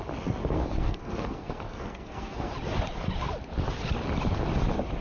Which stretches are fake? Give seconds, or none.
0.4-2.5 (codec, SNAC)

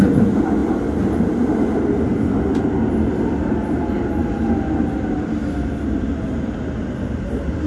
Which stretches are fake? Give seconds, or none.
none

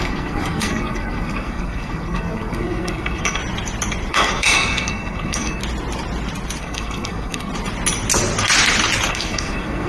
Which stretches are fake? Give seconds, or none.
0.0-3.4 (codec, SNAC); 4.1-5.6; 6.6-7.5; 9.1-9.9

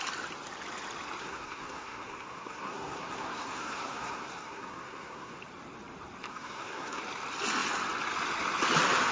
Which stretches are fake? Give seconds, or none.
1.2-5.4 (codec, SNAC); 6.3-7.0

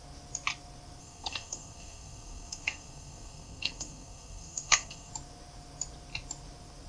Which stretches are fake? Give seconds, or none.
1.0-5.1 (codec, SNAC)

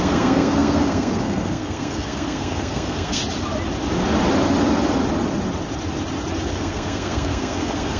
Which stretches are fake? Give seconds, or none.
0.0-3.2 (codec, SNAC); 6.5-8.0

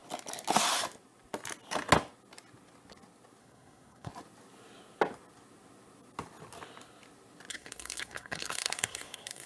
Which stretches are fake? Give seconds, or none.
3.4-4.1 (codec, SNAC); 7.5-9.5